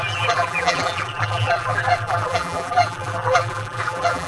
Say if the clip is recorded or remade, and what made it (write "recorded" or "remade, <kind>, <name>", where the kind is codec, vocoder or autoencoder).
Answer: remade, vocoder, BigVGAN v2